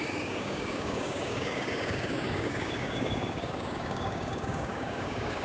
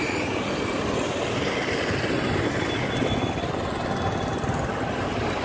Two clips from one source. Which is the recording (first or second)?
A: second